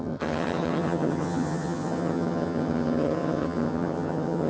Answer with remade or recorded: remade